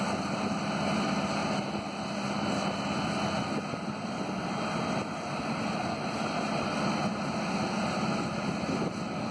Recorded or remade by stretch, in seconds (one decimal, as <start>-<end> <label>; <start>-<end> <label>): 0.0-9.3 recorded